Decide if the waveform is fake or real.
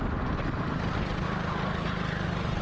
real